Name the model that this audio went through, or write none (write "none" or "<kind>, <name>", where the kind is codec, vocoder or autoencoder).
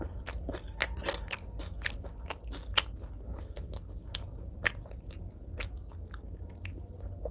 none